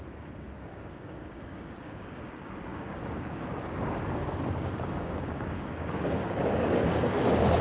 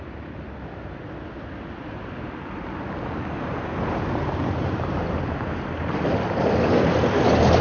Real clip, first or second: second